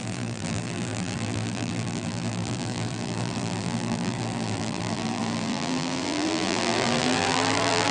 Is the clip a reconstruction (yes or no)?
yes